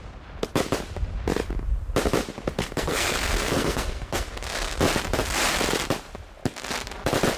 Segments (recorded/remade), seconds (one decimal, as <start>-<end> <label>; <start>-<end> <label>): 0.0-2.6 recorded; 2.6-4.8 remade; 4.8-7.4 recorded